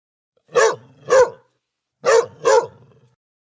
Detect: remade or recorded recorded